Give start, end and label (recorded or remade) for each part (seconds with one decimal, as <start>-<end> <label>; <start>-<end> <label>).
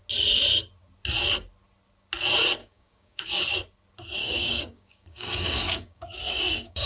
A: 0.0-2.6 recorded; 2.6-3.4 remade; 3.4-4.2 recorded; 4.2-6.9 remade